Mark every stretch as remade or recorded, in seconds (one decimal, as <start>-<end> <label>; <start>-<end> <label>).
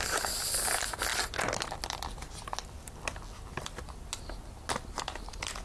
0.0-5.6 recorded